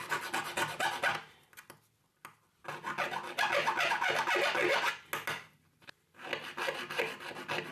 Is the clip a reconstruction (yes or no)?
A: no